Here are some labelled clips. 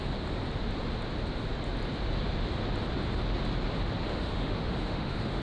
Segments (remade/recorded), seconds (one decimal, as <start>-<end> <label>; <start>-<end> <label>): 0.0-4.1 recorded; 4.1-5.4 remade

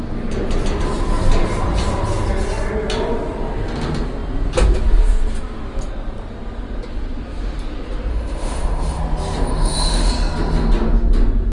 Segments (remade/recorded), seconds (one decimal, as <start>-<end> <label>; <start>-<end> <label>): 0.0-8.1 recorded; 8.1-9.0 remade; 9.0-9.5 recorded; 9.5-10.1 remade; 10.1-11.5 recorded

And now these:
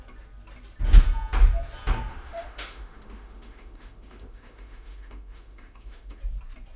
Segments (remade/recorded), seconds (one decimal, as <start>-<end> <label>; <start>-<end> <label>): 0.0-2.1 recorded; 2.1-6.2 remade; 6.2-6.8 recorded